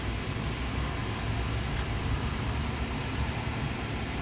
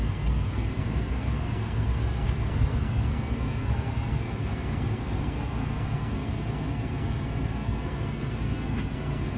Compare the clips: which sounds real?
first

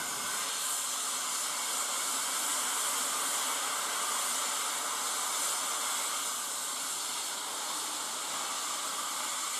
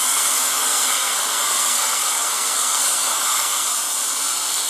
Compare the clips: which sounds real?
first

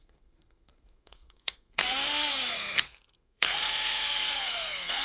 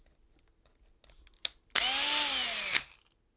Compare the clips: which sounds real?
second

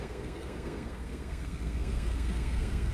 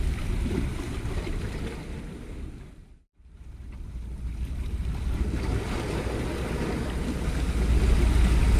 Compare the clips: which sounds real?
second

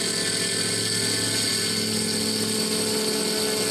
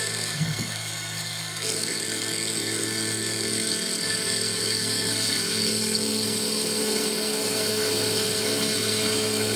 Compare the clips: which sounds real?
first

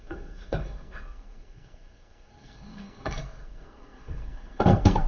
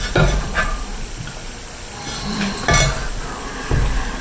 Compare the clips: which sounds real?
second